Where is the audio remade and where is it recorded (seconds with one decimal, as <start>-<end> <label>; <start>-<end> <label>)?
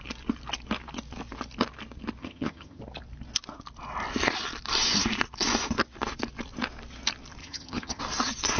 0.0-2.2 recorded; 2.2-2.8 remade; 2.8-7.4 recorded; 7.4-8.0 remade; 8.0-8.6 recorded